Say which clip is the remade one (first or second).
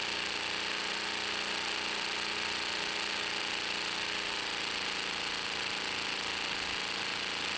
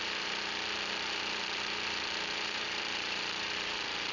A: second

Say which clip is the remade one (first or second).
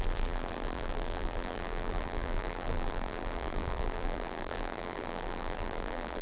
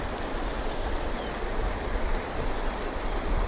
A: first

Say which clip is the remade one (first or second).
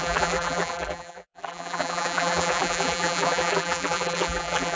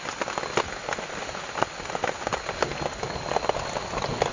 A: first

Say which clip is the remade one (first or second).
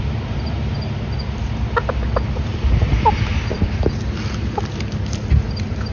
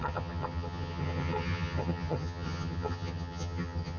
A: second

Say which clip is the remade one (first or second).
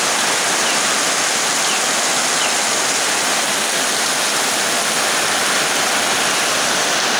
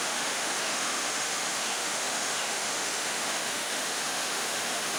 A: second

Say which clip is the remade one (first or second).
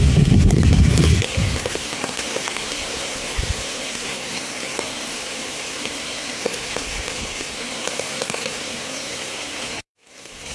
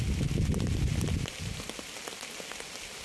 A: first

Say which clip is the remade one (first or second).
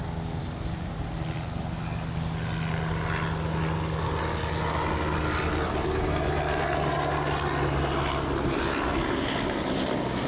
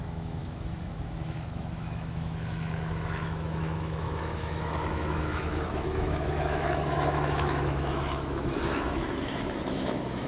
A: second